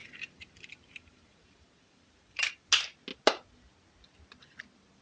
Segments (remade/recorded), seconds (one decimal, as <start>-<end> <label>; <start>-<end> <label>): 0.0-2.5 remade; 2.5-5.0 recorded